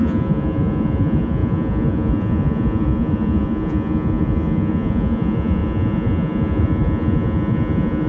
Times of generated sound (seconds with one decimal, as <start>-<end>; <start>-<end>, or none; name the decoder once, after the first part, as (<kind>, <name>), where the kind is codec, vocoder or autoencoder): 0.0-8.1 (vocoder, Vocos)